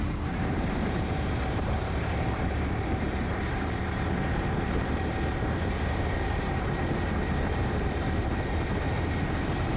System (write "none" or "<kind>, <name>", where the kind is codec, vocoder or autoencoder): vocoder, BigVGAN v2